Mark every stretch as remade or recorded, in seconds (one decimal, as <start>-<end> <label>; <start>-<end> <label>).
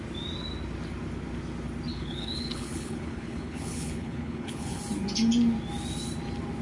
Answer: 0.0-1.9 recorded; 1.9-4.8 remade; 4.8-6.6 recorded